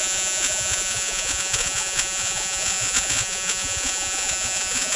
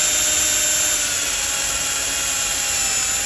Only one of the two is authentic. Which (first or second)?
second